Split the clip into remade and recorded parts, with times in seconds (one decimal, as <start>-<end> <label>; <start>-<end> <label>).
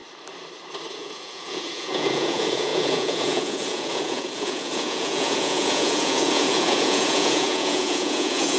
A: 0.0-0.9 recorded; 0.9-8.6 remade